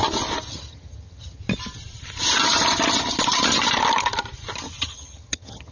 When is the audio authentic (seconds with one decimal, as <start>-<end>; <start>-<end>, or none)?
0.0-0.5; 1.4-4.8